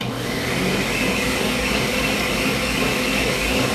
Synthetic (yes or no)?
yes